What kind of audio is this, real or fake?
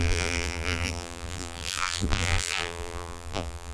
fake